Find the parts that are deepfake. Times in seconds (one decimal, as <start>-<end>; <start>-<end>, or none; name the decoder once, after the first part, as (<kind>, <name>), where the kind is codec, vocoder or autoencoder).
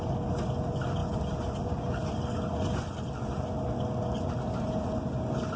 none